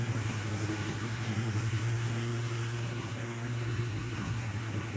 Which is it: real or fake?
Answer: fake